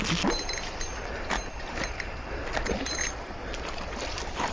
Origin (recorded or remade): recorded